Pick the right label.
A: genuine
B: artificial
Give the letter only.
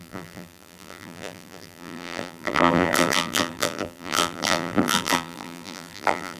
B